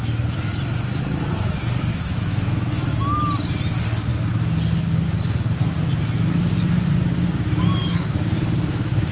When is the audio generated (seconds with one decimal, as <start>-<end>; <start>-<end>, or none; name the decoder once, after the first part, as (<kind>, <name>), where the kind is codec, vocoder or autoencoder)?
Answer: 1.9-3.0 (autoencoder, DAC-VAE); 7.8-9.1